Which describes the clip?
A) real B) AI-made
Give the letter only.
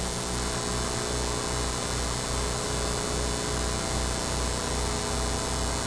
A